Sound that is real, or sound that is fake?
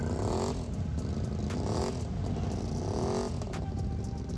real